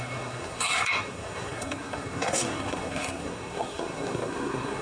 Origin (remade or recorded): remade